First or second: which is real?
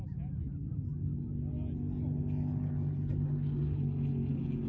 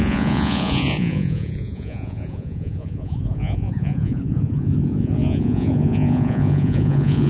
first